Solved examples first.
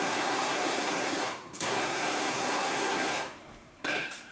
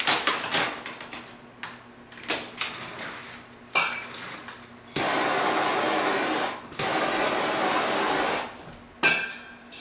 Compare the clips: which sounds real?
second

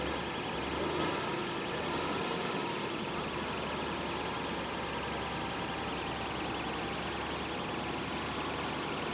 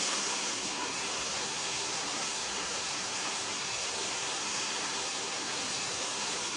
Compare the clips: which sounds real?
first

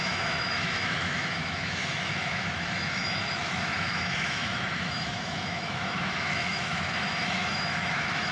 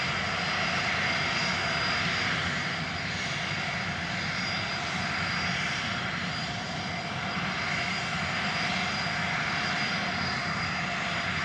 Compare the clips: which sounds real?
second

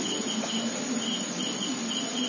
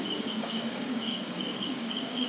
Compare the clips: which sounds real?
first